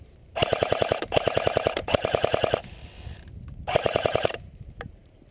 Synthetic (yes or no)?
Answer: yes